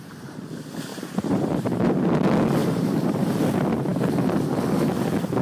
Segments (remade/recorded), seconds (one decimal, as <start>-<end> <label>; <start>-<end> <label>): 0.0-0.9 recorded; 0.9-1.9 remade; 1.9-2.6 recorded; 2.6-3.3 remade; 3.3-5.4 recorded